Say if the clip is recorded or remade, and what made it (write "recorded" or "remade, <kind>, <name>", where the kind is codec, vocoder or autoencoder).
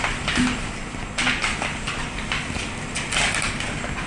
recorded